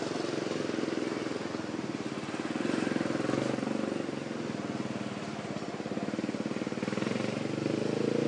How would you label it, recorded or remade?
recorded